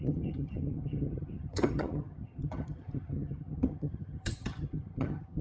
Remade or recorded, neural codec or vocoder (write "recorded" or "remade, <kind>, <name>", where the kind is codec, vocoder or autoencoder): remade, vocoder, HiFi-GAN